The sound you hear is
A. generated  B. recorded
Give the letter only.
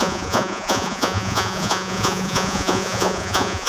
A